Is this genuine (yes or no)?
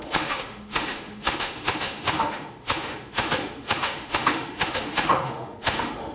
no